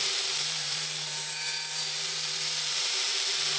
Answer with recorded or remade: remade